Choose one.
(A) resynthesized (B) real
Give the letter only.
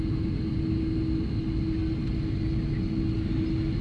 B